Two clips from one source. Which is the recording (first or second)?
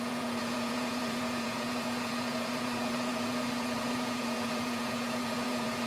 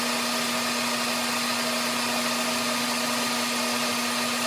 second